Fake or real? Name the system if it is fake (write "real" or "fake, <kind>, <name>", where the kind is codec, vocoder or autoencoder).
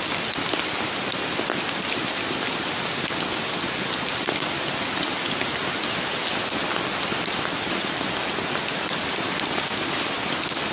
real